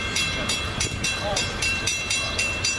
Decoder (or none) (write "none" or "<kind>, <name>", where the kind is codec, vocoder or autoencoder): vocoder, BigVGAN v2